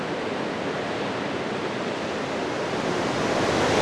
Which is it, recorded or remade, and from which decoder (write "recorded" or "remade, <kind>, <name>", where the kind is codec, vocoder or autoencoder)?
recorded